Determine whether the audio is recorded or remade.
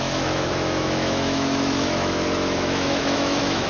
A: remade